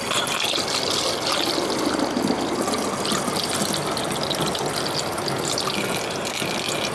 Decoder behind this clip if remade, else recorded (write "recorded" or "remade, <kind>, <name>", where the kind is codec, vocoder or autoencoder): recorded